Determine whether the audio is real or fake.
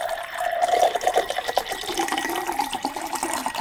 fake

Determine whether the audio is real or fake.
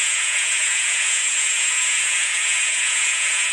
fake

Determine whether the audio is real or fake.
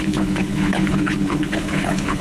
fake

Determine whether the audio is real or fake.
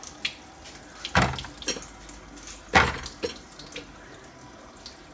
real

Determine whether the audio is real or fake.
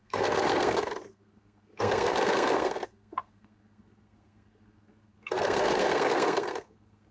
fake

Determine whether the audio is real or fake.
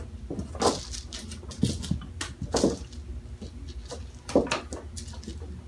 real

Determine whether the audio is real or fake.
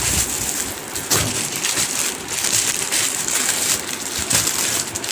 fake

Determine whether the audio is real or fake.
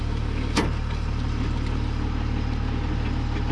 real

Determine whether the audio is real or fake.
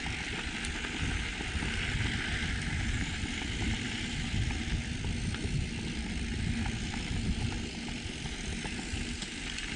real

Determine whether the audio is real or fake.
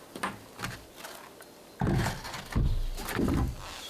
real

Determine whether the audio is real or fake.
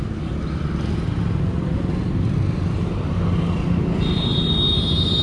real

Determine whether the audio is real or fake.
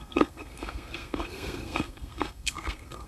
fake